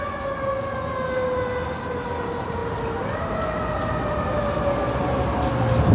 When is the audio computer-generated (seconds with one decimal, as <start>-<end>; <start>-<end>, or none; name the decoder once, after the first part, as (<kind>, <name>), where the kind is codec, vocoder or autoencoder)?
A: none